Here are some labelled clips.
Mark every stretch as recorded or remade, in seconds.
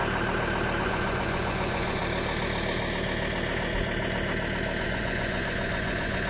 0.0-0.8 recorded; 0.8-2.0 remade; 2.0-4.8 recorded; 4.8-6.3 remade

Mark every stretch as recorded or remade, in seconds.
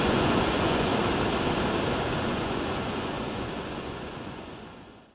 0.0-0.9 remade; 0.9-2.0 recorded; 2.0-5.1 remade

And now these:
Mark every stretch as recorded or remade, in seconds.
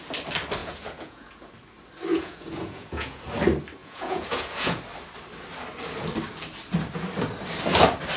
0.0-0.6 recorded; 0.6-1.5 remade; 1.5-2.1 recorded; 2.1-3.2 remade; 3.2-3.8 recorded; 3.8-4.8 remade; 4.8-8.2 recorded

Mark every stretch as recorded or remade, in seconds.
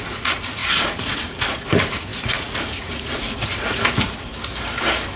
0.0-4.3 remade; 4.3-5.2 recorded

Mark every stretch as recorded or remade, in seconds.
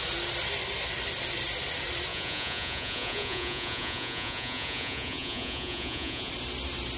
0.0-2.1 recorded; 2.1-6.3 remade; 6.3-7.0 recorded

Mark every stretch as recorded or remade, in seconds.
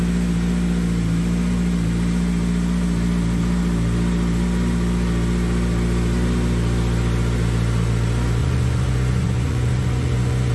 0.0-8.4 recorded; 8.4-10.5 remade